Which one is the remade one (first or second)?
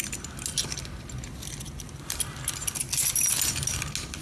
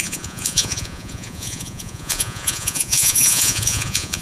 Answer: second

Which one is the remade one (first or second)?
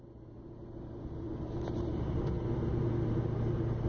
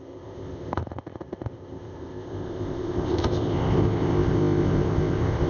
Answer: second